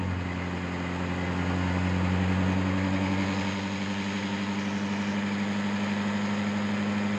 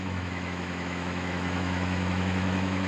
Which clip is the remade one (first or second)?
second